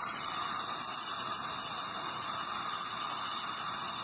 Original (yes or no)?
yes